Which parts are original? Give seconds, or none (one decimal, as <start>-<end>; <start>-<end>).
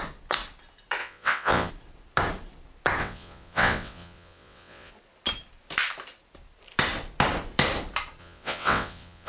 0.0-1.0; 1.7-3.0; 4.9-8.2